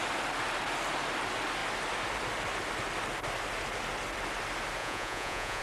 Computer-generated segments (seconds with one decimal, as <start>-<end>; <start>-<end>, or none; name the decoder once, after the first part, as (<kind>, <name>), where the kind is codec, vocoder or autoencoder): 4.8-5.6 (vocoder, Vocos)